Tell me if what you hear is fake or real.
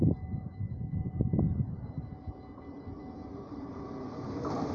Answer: real